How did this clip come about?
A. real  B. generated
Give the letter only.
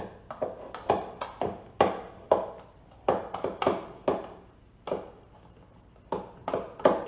A